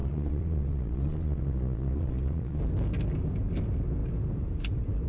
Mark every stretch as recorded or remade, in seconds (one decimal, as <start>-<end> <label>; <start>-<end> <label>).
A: 0.0-2.6 remade; 2.6-5.1 recorded